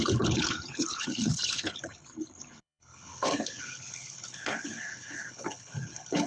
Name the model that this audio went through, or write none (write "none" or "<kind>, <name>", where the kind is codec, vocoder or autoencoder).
codec, HILCodec